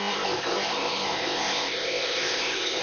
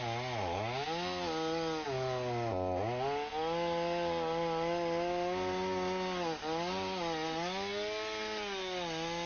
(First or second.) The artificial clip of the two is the first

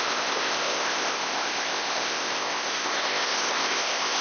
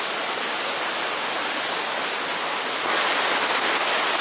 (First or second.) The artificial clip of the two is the first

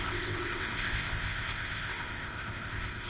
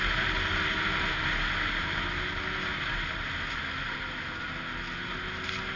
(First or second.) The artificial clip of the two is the first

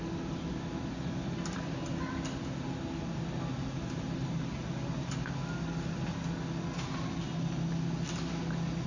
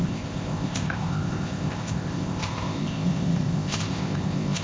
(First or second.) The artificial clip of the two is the second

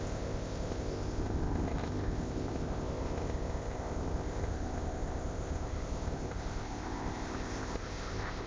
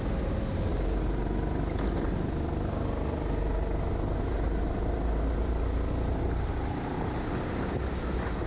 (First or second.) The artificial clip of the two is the first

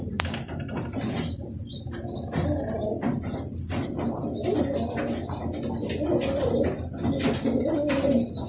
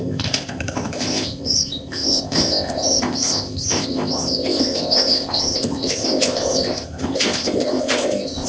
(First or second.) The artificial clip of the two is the second